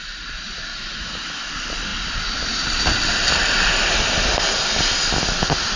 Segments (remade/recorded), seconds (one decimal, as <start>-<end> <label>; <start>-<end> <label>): 0.0-0.7 recorded; 0.7-1.5 remade; 1.5-5.8 recorded